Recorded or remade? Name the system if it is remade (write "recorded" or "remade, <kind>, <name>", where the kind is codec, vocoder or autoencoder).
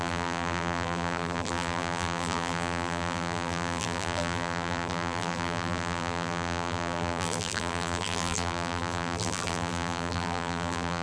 remade, vocoder, BigVGAN v2